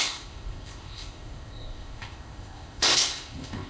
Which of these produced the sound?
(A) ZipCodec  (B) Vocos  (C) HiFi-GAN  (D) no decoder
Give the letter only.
A